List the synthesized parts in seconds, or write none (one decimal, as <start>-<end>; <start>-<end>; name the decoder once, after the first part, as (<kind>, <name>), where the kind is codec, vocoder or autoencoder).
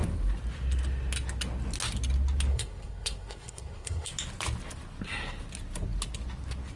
2.5-4.1 (codec, SNAC)